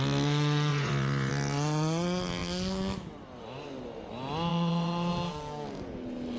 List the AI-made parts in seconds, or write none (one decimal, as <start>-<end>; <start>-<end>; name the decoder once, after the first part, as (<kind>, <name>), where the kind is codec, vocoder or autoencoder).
0.7-1.3 (vocoder, Vocos); 4.5-5.1